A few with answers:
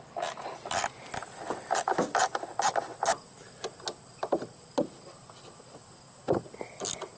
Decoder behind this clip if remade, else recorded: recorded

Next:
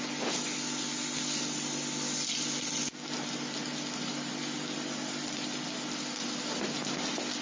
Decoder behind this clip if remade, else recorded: recorded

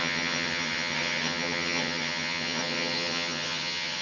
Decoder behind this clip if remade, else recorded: remade, vocoder, HiFi-GAN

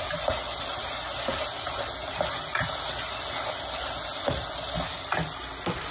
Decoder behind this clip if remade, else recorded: recorded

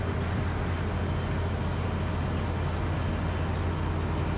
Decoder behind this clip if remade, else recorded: recorded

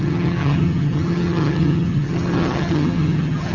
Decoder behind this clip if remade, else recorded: remade, vocoder, HiFi-GAN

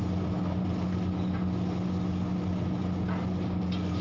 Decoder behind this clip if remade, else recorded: recorded